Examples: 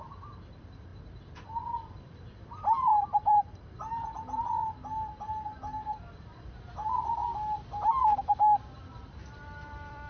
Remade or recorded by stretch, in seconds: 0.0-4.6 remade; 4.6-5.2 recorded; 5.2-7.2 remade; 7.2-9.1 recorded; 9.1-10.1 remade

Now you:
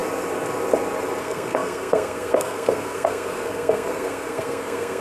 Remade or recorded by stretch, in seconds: 0.0-1.2 recorded; 1.2-5.0 remade

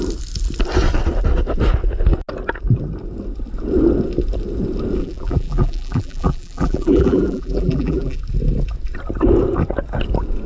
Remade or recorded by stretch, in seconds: 0.0-5.0 recorded; 5.0-8.2 remade; 8.2-10.5 recorded